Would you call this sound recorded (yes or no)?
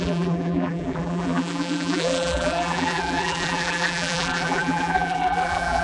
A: no